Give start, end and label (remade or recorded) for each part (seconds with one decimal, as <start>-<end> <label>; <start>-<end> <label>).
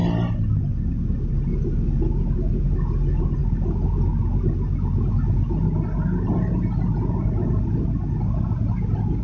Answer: 0.0-9.2 recorded